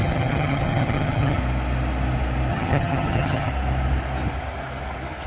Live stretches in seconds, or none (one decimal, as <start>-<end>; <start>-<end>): 1.4-2.5; 3.5-5.3